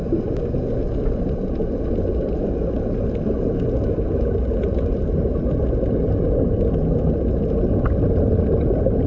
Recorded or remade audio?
recorded